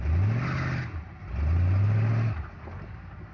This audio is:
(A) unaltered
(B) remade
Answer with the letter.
A